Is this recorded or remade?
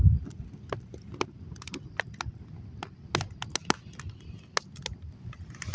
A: recorded